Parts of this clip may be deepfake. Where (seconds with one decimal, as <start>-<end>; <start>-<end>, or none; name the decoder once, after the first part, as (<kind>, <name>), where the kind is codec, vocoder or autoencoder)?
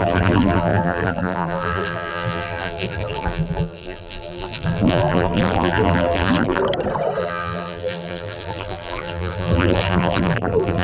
0.0-6.6 (vocoder, BigVGAN v2); 7.2-10.8